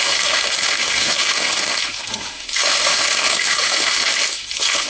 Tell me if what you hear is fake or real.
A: fake